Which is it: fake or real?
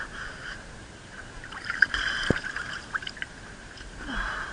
fake